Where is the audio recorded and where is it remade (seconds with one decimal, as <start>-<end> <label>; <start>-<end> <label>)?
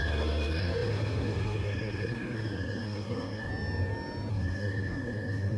0.0-3.5 remade; 3.5-4.3 recorded; 4.3-5.6 remade